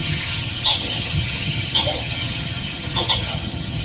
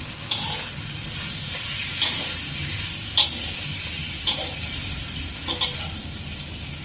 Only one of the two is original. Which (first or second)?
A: second